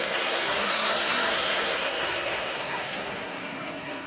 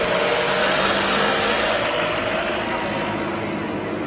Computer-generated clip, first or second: first